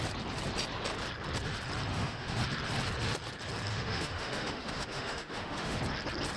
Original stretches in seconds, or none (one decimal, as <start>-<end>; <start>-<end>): 0.0-1.9; 2.4-3.7; 5.8-6.4